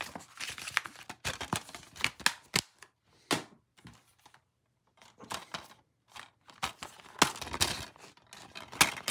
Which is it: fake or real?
real